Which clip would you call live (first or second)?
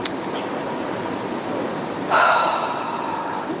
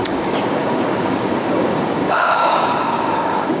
first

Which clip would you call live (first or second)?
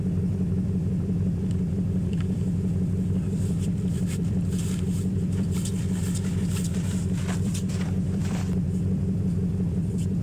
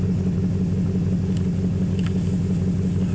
second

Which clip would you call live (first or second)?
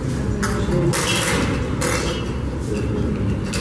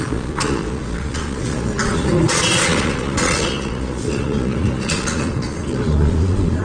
first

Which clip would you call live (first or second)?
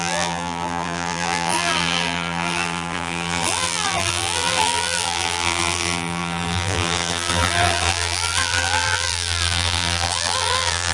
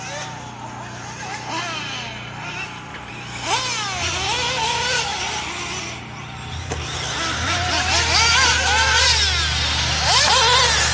second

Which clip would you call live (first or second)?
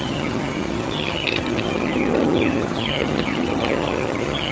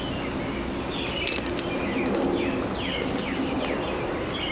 second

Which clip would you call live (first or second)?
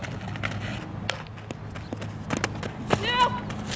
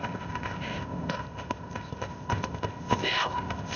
first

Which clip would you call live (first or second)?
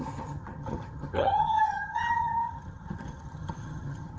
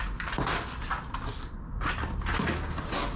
second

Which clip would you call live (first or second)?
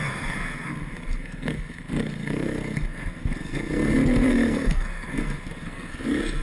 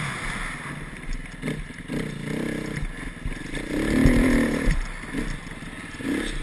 second